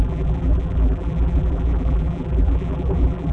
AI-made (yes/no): yes